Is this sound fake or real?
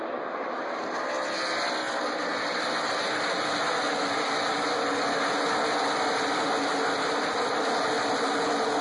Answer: real